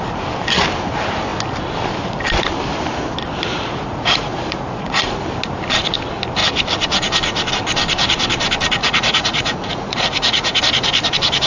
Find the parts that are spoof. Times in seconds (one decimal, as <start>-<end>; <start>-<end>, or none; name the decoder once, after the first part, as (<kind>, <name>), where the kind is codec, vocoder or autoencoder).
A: 3.5-5.2 (vocoder, Vocos); 8.8-10.6